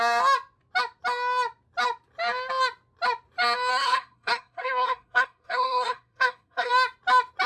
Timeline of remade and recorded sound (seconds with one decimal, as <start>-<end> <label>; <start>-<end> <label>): 0.0-3.7 recorded; 3.7-6.7 remade; 6.7-7.5 recorded